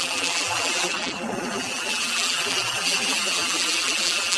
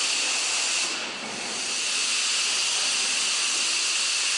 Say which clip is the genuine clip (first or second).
second